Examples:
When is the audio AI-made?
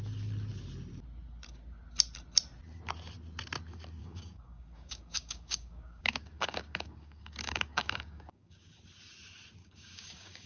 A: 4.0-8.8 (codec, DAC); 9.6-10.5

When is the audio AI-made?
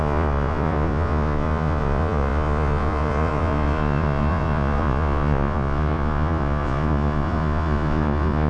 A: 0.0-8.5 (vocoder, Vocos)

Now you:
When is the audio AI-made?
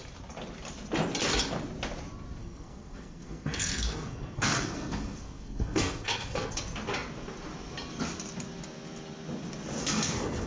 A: 2.4-6.6 (codec, SNAC); 9.8-10.5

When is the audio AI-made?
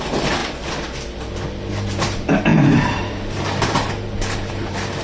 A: 0.0-0.4 (vocoder, BigVGAN v2); 1.7-5.0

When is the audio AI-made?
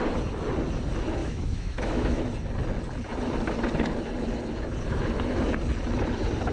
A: 1.2-2.2 (autoencoder, DAC-VAE)